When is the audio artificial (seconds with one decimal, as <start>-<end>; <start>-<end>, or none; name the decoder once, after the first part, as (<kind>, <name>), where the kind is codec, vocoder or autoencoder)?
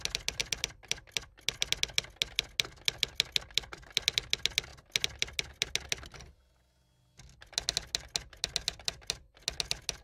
none